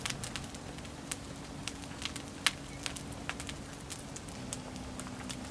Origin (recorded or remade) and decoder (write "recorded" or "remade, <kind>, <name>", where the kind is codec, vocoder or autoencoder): recorded